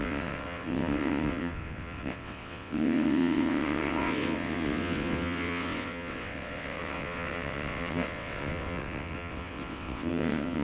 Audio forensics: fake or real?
fake